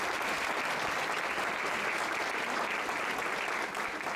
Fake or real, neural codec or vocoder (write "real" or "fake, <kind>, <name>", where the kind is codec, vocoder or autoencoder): real